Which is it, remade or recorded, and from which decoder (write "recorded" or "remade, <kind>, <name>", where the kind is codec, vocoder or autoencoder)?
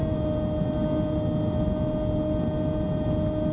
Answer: recorded